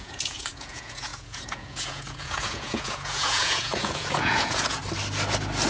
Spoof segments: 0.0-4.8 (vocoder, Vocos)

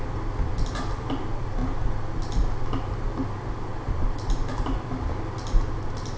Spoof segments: none

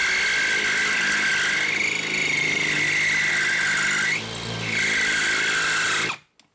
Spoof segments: none

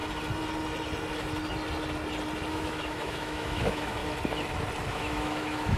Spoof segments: 2.5-4.0 (autoencoder, DAC-VAE); 4.9-5.8